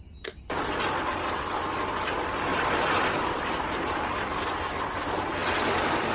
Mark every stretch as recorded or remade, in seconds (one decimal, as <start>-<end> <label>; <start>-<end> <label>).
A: 0.0-2.5 recorded; 2.5-4.4 remade; 4.4-6.1 recorded